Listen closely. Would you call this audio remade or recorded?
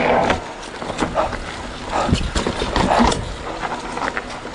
recorded